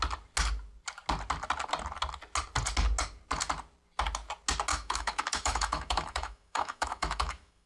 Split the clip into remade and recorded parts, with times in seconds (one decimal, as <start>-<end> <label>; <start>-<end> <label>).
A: 0.0-4.7 recorded; 4.7-7.7 remade